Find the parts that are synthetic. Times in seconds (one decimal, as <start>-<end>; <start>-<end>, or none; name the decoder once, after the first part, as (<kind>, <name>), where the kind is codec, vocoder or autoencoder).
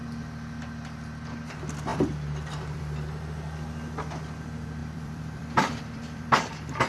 1.9-2.8 (vocoder, BigVGAN v2); 4.8-6.5